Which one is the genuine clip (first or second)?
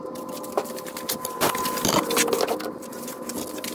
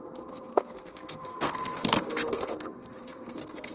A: first